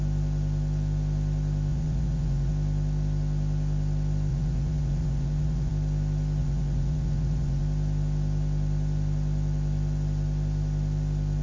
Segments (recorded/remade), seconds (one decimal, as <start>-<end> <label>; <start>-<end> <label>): 0.0-1.7 recorded; 1.7-2.5 remade; 2.5-4.3 recorded; 4.3-5.7 remade; 5.7-6.4 recorded; 6.4-7.6 remade; 7.6-11.4 recorded